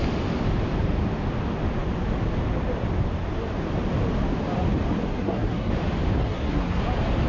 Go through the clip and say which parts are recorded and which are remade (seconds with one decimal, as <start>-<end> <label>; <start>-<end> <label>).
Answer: 0.0-5.1 recorded; 5.1-5.7 remade; 5.7-6.2 recorded; 6.2-6.8 remade; 6.8-7.3 recorded